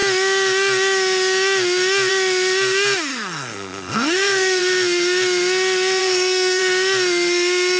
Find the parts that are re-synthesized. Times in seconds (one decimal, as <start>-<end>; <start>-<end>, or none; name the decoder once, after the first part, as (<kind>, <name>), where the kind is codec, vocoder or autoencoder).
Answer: 3.1-4.6 (codec, SNAC); 6.0-6.6